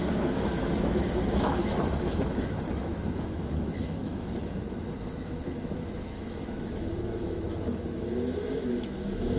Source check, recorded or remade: remade